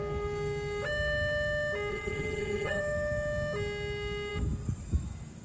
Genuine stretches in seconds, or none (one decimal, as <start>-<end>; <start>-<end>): 0.0-1.9; 2.8-5.4